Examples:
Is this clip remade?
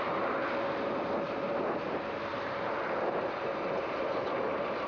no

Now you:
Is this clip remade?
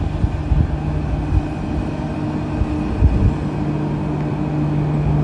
no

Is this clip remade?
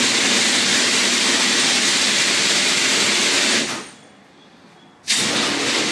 no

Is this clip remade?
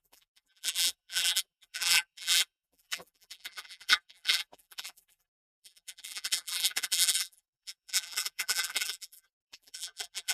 yes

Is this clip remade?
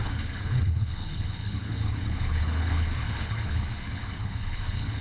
yes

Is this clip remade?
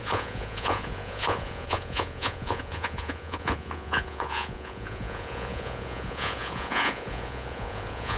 yes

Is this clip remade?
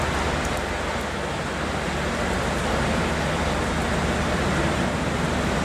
no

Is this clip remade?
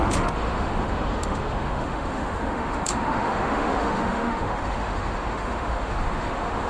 yes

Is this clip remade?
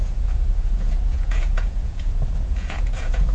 yes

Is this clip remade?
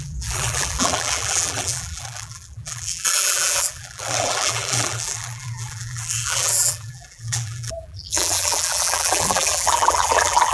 yes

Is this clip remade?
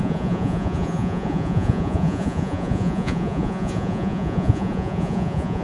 yes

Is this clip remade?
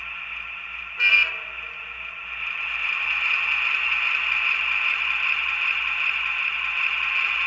no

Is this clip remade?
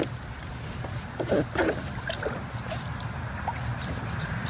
no